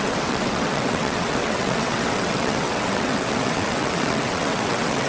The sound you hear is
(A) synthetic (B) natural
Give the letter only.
A